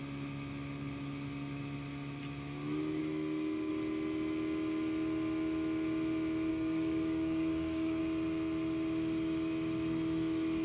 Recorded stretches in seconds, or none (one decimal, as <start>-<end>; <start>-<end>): 0.0-3.0; 3.7-6.5; 8.0-10.6